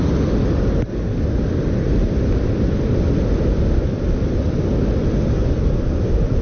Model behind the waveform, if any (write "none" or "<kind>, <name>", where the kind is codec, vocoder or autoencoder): none